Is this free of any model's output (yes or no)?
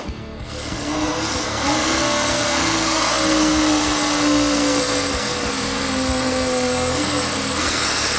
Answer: no